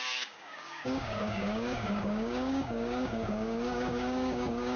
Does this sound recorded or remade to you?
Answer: remade